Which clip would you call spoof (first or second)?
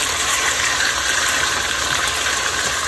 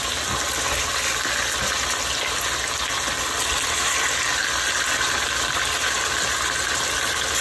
first